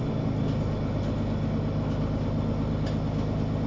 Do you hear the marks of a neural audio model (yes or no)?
no